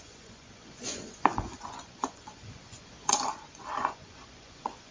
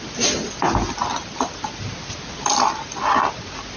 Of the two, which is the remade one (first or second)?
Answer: first